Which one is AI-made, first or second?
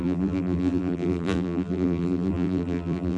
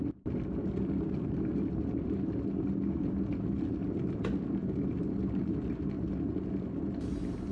first